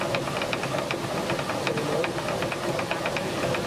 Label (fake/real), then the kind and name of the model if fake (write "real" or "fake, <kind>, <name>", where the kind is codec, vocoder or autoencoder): real